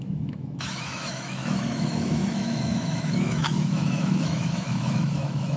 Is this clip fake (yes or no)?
yes